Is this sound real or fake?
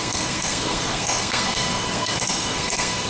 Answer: fake